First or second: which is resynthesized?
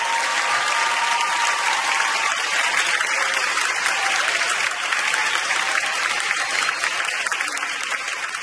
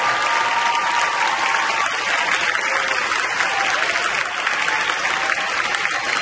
first